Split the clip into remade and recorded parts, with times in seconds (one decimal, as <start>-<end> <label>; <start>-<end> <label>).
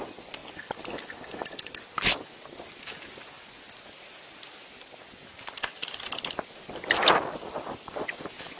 0.0-8.6 recorded